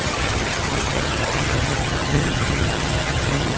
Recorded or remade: remade